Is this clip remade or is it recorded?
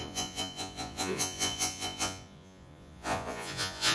remade